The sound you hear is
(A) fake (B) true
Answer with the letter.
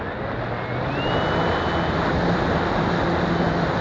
B